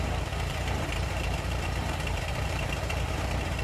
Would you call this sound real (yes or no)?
no